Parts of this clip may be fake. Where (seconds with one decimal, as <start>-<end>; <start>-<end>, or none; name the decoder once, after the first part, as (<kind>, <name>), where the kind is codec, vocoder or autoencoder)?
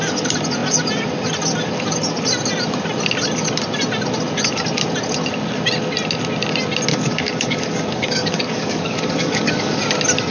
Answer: 6.9-9.8 (codec, DAC)